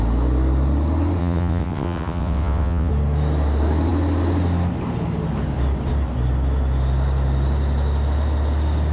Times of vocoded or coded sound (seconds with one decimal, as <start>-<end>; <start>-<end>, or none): 1.2-2.9

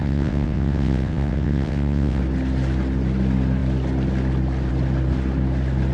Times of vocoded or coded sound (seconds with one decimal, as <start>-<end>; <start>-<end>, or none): 0.0-2.2